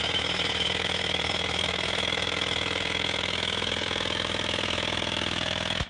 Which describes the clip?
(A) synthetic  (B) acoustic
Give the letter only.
A